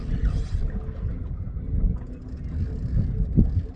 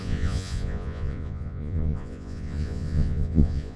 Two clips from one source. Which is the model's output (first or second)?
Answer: second